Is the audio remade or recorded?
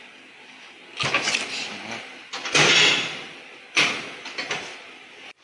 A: recorded